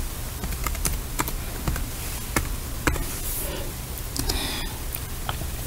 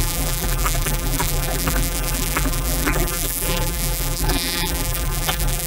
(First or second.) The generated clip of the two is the second